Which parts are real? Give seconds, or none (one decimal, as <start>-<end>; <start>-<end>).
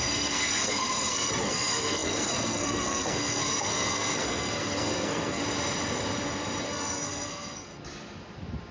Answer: 5.4-6.6; 7.7-8.7